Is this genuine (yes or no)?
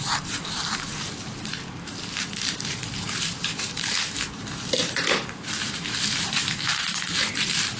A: no